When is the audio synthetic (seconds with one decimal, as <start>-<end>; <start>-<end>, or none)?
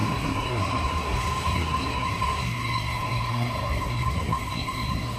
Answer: 0.0-5.2